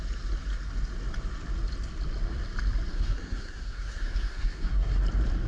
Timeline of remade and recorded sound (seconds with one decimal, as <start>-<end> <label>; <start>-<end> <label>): 0.0-2.9 recorded; 2.9-5.0 remade; 5.0-5.5 recorded